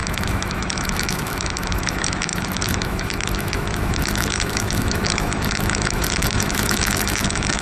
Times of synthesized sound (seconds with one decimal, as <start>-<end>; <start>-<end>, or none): 0.0-7.6